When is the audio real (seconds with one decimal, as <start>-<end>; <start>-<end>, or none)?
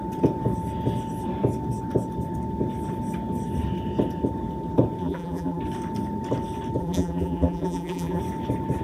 0.0-5.0; 5.6-6.8; 8.2-8.8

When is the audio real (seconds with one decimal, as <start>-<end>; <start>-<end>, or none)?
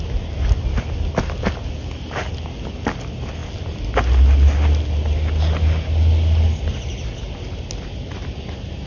0.0-8.9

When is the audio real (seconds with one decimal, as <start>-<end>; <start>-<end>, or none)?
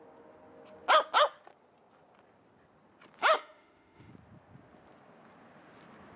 0.0-3.2; 4.1-6.2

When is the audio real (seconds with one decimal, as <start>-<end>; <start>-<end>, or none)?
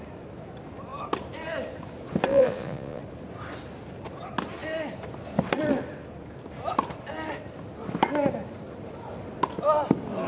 0.0-2.3; 3.0-10.3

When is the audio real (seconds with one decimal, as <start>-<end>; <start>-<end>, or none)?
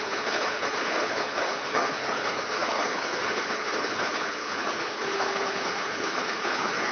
none